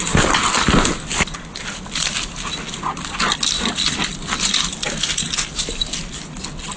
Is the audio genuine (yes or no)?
yes